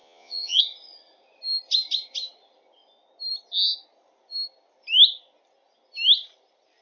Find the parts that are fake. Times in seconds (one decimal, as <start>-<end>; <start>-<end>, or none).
0.0-0.6